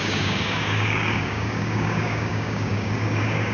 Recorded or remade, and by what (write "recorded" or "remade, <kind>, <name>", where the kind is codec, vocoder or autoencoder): remade, codec, DAC